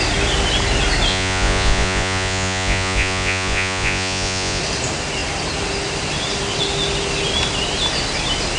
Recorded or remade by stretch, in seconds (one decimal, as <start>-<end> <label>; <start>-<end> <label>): 0.0-1.1 recorded; 1.1-4.6 remade; 4.6-8.6 recorded